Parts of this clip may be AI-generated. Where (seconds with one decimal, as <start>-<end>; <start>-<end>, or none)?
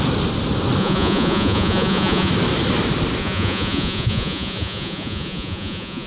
0.8-2.3; 3.2-6.1